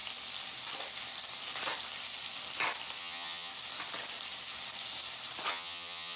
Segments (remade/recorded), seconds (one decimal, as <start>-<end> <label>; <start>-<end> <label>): 0.0-3.0 recorded; 3.0-3.5 remade; 3.5-5.5 recorded; 5.5-6.2 remade